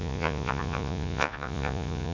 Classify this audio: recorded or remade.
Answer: remade